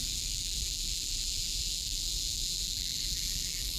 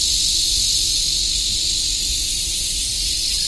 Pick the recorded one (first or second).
second